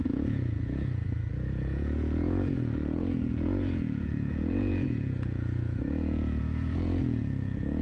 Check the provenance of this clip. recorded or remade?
remade